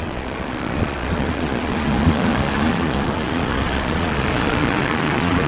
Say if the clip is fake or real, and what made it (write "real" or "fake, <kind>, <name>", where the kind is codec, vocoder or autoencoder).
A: fake, vocoder, Vocos